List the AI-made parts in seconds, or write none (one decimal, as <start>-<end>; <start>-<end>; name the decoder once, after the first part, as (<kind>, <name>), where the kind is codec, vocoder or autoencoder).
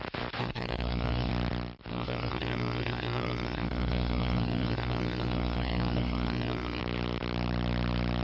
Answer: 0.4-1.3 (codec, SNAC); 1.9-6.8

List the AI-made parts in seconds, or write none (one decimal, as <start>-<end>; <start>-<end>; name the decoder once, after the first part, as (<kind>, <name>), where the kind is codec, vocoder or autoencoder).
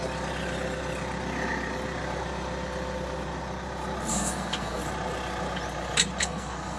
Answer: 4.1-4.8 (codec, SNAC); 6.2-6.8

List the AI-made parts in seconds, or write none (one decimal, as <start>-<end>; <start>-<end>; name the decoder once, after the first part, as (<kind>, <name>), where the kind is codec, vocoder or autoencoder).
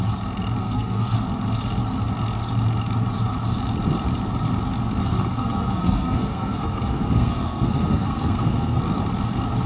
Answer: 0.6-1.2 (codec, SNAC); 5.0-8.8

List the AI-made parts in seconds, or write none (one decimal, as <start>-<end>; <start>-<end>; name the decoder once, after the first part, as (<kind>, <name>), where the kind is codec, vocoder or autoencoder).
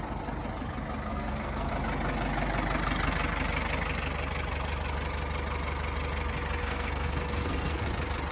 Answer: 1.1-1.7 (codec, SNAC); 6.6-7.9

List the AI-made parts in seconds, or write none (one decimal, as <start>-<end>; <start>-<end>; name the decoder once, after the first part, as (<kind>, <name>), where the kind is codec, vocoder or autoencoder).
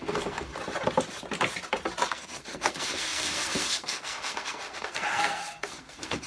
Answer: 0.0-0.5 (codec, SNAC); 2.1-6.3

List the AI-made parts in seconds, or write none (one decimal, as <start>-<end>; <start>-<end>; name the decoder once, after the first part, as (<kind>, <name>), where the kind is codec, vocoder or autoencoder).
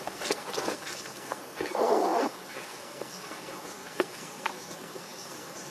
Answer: 0.0-5.7 (codec, SNAC)